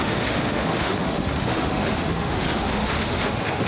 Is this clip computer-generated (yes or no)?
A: yes